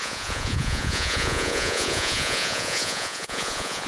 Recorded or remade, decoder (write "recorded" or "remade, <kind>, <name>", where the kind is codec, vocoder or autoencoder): remade, vocoder, Vocos